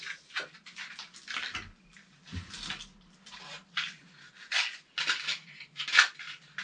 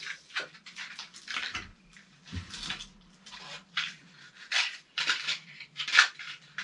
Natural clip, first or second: first